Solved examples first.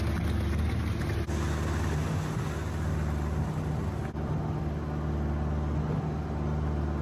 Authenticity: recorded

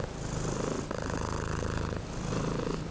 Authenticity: recorded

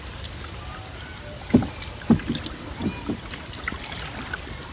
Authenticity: recorded